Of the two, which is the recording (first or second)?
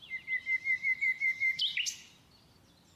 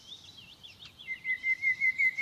first